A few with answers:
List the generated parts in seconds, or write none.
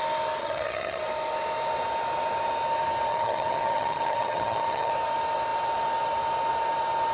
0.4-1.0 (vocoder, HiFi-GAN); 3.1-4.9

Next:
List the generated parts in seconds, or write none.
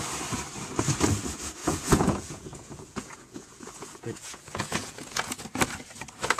1.6-5.4 (vocoder, Vocos)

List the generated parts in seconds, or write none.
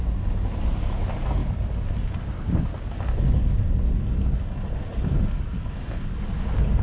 none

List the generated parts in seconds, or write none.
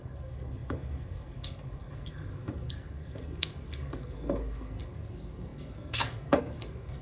0.0-7.0 (codec, SNAC)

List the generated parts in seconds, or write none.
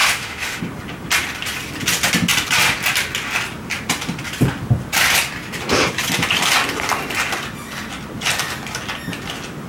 0.0-0.6 (autoencoder, DAC-VAE)